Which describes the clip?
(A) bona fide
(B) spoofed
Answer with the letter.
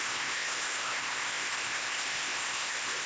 B